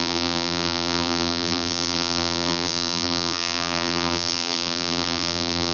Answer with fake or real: fake